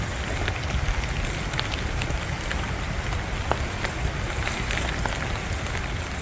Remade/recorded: recorded